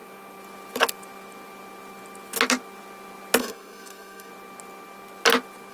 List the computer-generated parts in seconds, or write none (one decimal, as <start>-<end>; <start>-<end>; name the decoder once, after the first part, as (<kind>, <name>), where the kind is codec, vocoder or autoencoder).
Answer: 3.4-4.3 (codec, SNAC)